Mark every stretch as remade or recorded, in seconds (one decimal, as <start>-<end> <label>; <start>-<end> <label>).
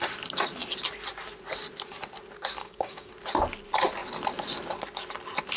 0.0-2.6 recorded; 2.6-3.1 remade; 3.1-5.6 recorded